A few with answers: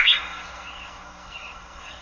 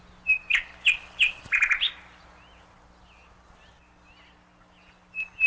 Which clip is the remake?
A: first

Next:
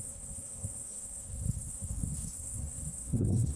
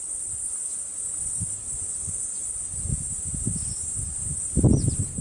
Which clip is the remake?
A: first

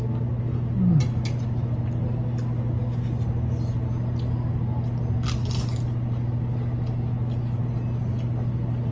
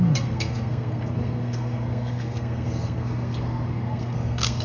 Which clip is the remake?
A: second